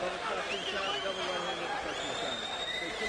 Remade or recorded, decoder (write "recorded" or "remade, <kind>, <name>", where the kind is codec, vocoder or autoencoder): recorded